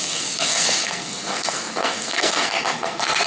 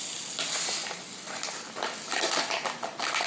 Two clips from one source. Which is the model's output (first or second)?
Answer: first